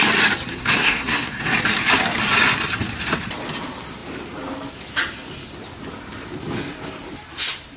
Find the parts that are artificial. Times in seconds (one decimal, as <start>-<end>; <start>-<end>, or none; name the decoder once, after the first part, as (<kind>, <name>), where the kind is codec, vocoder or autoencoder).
0.5-1.4 (codec, SNAC)

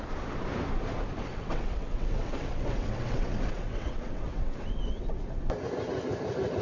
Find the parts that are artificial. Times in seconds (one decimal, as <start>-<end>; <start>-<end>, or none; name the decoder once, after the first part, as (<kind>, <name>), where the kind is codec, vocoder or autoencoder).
1.2-5.2 (vocoder, WaveNeXt)

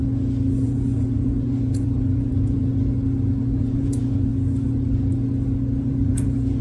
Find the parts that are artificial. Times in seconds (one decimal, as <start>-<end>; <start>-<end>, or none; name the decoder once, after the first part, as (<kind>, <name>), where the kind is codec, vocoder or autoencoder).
0.6-2.7 (vocoder, Vocos); 3.6-4.3; 5.8-6.6

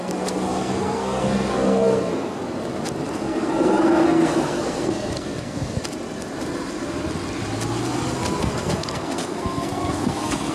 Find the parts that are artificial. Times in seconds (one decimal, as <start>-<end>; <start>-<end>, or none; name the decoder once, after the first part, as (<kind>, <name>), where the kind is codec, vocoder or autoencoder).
0.0-2.4 (codec, SNAC); 3.1-5.8; 8.4-10.5